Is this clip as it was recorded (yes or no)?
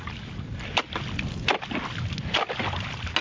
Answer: yes